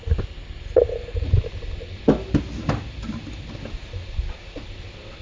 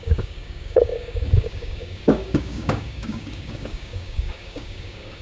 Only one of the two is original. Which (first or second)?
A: first